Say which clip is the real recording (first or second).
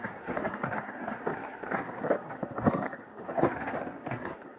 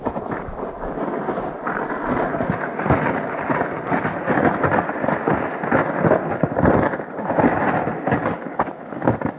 second